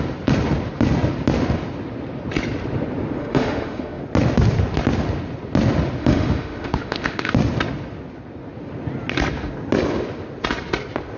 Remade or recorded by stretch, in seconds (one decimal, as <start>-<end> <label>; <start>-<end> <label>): 0.0-3.2 recorded; 3.2-4.0 remade; 4.0-6.0 recorded; 6.0-7.3 remade; 7.3-11.2 recorded